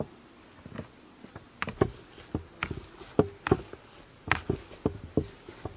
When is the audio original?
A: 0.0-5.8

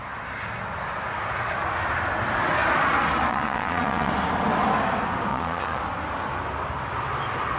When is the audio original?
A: 0.0-3.3; 4.1-5.3; 5.8-7.6

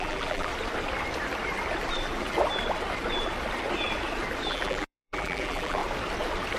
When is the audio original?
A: 0.5-4.5; 5.8-6.6

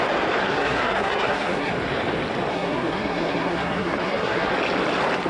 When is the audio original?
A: 0.0-0.4; 1.7-2.5; 4.5-5.3

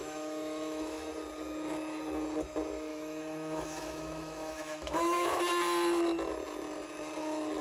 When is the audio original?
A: 1.1-2.9; 5.4-7.6

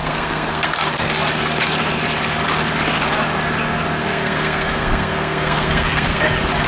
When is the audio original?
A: 1.1-4.0; 6.3-6.7

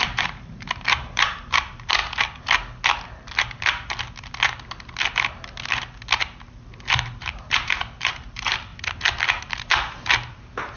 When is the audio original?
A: 2.0-6.8; 8.7-9.4